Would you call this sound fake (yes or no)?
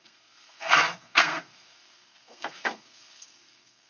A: yes